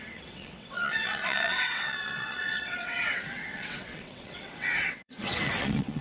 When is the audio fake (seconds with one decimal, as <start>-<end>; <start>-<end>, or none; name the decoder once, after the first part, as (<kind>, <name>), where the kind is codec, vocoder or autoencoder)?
0.0-6.0 (vocoder, WaveNeXt)